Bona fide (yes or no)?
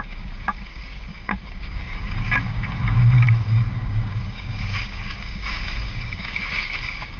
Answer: no